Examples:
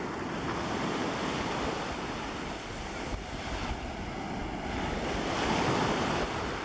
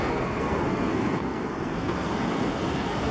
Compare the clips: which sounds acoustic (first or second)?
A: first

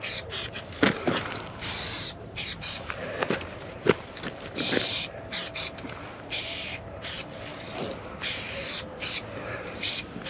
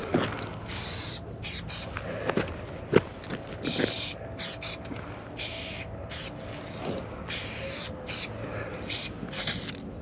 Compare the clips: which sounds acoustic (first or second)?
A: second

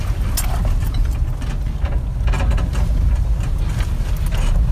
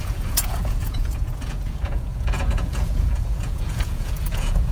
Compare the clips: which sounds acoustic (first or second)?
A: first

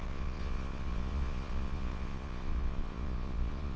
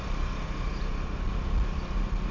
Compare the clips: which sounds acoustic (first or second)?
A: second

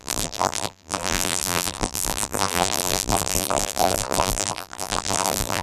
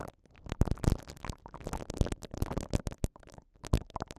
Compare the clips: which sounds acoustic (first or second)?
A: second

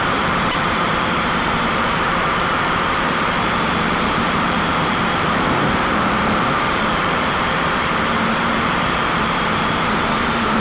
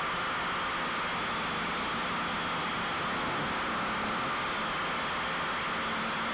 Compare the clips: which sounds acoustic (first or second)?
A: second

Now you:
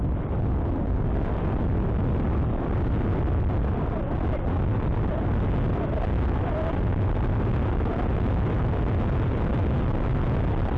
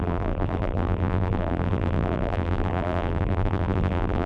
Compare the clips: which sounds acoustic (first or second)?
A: first